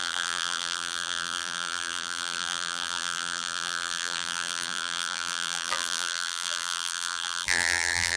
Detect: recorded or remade remade